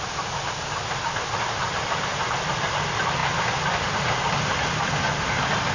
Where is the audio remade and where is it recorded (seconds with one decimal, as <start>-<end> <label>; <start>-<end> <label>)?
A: 0.0-5.7 recorded